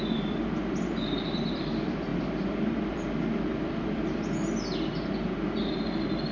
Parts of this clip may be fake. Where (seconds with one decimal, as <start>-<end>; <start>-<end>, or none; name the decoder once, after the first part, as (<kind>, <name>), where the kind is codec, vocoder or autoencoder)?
0.0-4.4 (vocoder, BigVGAN v2)